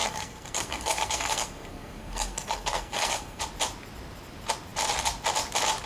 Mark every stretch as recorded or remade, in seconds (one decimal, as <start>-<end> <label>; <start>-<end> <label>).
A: 0.0-3.4 remade; 3.4-5.9 recorded